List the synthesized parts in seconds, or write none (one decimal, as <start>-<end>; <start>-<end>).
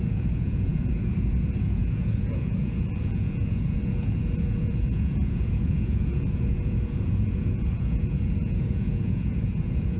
0.0-10.0